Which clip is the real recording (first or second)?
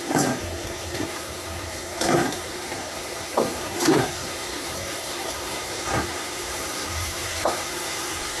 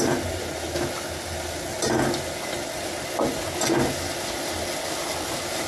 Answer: second